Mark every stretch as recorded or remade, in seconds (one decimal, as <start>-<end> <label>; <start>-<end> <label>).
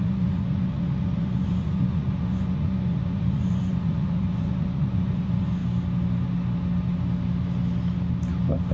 0.0-5.6 remade; 5.6-8.7 recorded